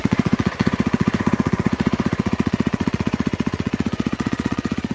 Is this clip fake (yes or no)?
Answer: yes